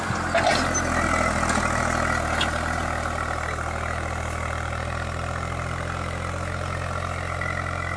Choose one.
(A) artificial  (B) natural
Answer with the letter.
B